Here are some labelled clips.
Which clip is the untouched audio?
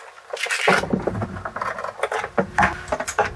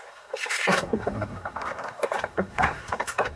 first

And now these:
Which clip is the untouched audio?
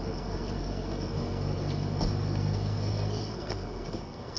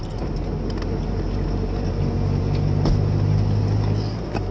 second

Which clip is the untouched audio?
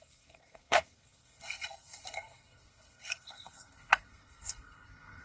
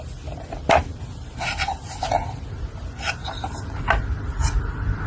second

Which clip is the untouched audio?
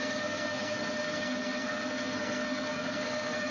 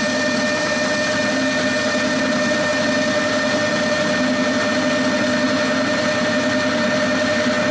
second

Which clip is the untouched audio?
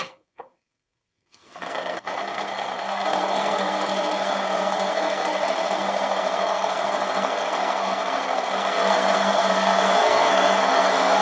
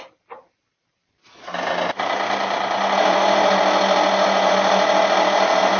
second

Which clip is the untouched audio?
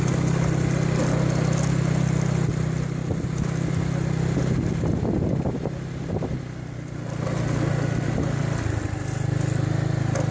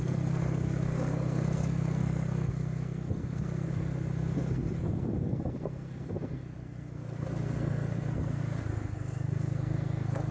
first